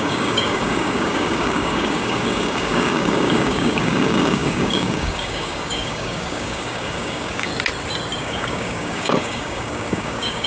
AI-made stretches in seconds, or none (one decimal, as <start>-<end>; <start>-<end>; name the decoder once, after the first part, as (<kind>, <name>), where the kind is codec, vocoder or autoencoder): 0.0-7.5 (codec, DAC); 8.2-10.5